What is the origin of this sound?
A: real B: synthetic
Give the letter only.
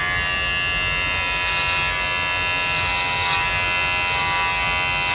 A